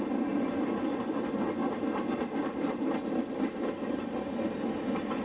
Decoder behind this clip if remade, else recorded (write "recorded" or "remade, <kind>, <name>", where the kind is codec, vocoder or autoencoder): recorded